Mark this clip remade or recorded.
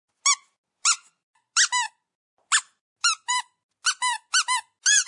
recorded